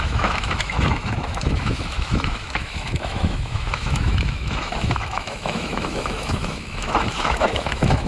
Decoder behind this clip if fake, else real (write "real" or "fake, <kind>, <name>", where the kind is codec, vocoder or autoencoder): fake, autoencoder, DAC-VAE